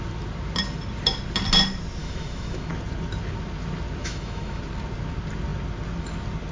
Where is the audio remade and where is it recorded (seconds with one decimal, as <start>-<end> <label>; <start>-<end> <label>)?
0.0-2.0 recorded; 2.0-2.7 remade; 2.7-4.0 recorded; 4.0-4.6 remade; 4.6-6.5 recorded